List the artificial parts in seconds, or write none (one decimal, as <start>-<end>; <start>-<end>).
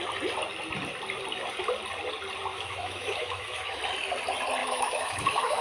2.5-3.8; 4.6-5.6